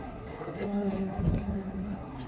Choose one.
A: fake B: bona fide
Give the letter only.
A